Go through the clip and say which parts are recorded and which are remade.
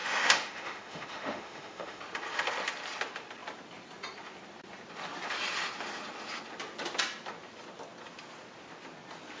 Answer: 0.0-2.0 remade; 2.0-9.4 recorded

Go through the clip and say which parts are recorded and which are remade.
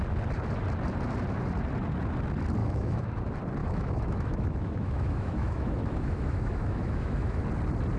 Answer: 0.0-2.6 recorded; 2.6-3.2 remade; 3.2-3.6 recorded; 3.6-7.4 remade; 7.4-8.0 recorded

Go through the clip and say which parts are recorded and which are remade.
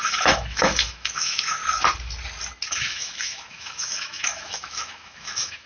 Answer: 0.0-1.6 remade; 1.6-2.7 recorded; 2.7-5.7 remade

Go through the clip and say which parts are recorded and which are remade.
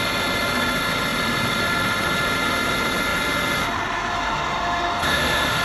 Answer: 0.0-4.1 recorded; 4.1-5.6 remade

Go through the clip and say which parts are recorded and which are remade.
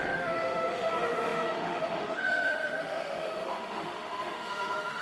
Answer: 0.0-5.0 remade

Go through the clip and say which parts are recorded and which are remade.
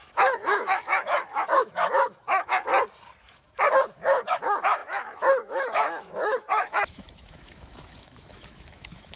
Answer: 0.0-2.7 remade; 2.7-3.2 recorded; 3.2-9.2 remade